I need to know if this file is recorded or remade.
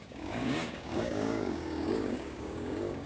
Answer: remade